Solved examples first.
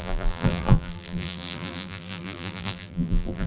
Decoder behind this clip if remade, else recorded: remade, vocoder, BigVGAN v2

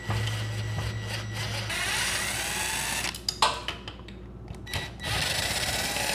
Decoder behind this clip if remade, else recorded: recorded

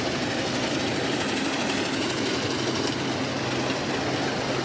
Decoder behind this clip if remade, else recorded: recorded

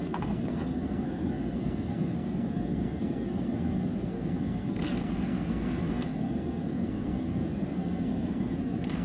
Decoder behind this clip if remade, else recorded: remade, codec, SNAC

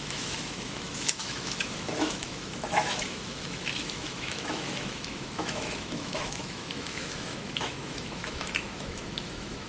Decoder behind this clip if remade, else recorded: remade, autoencoder, DAC-VAE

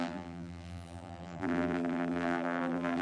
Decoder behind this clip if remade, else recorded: remade, vocoder, BigVGAN v2